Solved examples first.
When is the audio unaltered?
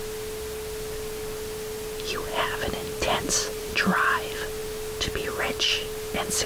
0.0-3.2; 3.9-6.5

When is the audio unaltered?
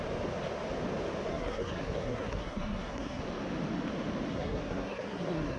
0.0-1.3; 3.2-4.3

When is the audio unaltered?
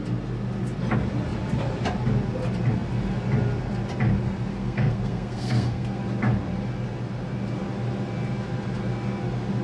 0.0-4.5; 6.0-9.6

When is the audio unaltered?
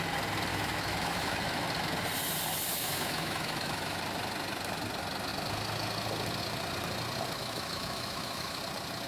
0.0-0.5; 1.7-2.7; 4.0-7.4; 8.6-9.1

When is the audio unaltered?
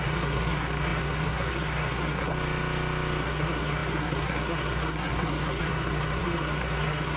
2.3-3.2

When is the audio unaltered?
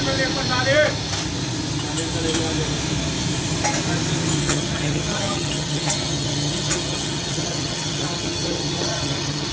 0.0-4.4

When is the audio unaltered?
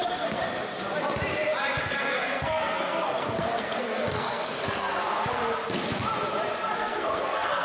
0.4-1.8; 5.4-6.8